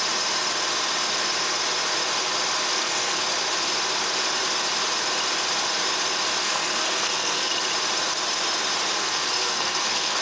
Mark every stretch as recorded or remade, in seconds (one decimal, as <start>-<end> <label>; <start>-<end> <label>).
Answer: 0.0-2.7 recorded; 2.7-3.2 remade; 3.2-6.4 recorded; 6.4-7.5 remade; 7.5-9.0 recorded; 9.0-10.2 remade